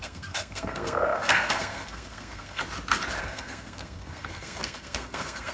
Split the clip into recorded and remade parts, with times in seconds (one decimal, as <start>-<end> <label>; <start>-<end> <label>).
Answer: 0.0-2.6 remade; 2.6-3.2 recorded; 3.2-5.5 remade